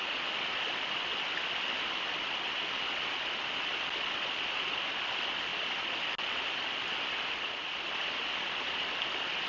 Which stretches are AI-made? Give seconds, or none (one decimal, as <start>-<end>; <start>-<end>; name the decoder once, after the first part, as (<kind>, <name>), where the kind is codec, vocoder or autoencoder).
none